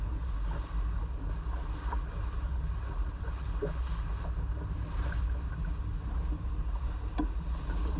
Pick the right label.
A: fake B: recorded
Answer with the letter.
B